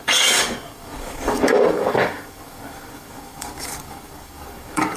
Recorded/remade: remade